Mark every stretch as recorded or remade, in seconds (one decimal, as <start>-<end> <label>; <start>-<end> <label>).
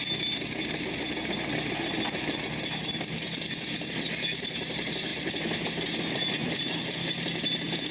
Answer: 0.0-7.9 recorded